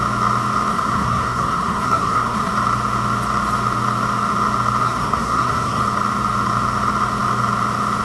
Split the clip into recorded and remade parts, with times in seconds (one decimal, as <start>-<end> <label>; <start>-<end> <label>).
0.0-0.7 recorded; 0.7-2.5 remade; 2.5-4.8 recorded; 4.8-5.8 remade; 5.8-8.0 recorded